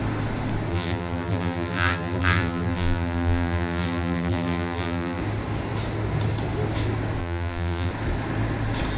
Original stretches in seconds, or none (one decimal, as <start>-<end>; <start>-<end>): 0.0-0.7; 5.2-7.2; 7.9-9.0